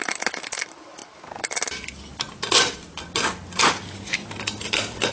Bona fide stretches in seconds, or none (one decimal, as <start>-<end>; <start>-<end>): 1.0-4.1